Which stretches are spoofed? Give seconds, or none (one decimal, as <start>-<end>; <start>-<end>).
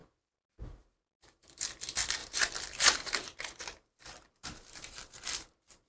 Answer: 0.0-1.7; 2.2-5.9